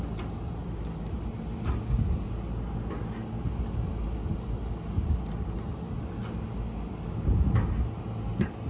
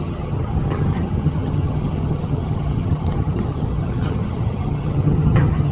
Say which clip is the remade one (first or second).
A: second